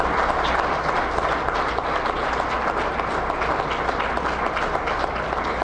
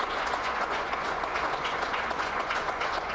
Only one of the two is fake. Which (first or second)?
second